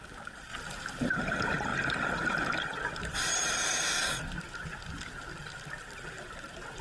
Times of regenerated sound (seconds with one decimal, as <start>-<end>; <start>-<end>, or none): 0.0-0.5; 1.1-1.7; 2.3-2.7